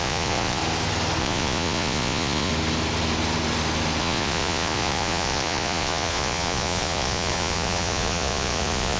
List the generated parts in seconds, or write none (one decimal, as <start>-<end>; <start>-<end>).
0.0-0.6; 1.2-2.5; 4.0-9.0